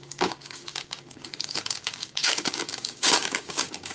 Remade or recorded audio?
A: remade